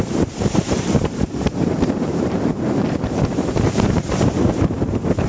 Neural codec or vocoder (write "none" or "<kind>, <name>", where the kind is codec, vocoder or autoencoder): vocoder, BigVGAN v2